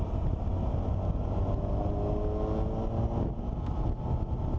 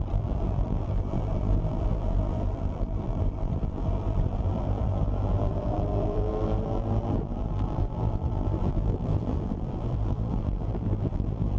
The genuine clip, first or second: first